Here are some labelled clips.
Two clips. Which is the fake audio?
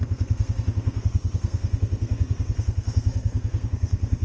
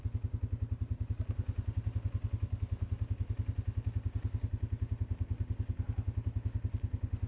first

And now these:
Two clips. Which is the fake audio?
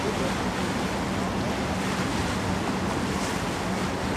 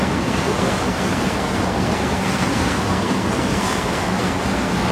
second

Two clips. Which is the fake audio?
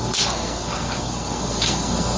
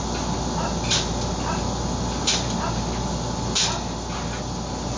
first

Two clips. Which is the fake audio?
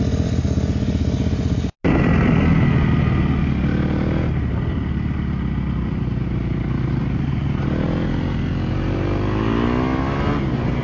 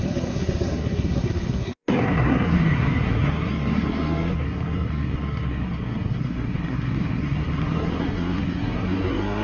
second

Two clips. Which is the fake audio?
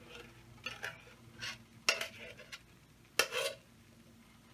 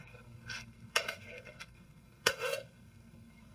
second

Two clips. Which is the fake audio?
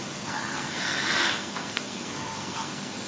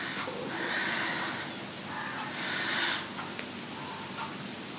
first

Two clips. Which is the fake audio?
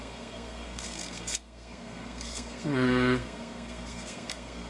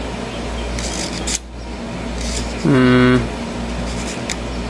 first